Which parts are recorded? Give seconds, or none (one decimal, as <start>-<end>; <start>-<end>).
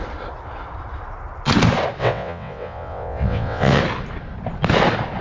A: 0.0-2.0; 3.8-5.2